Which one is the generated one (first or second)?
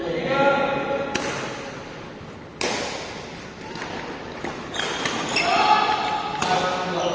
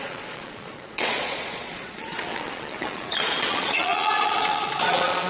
second